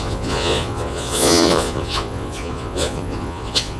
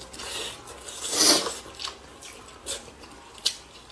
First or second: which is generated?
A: first